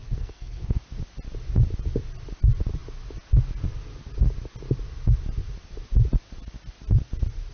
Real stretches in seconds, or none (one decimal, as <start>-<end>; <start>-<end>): 0.8-7.5